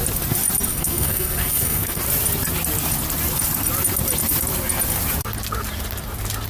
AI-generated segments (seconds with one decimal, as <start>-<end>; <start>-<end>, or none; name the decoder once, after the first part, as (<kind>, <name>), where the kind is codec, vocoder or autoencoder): 0.7-2.0 (codec, SNAC)